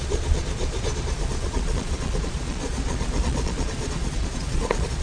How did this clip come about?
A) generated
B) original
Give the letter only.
A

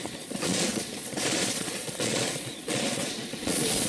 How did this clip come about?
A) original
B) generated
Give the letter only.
B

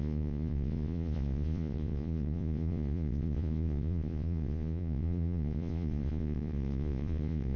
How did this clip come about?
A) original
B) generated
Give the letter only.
B